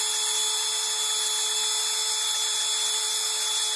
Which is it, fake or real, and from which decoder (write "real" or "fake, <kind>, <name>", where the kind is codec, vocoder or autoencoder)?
real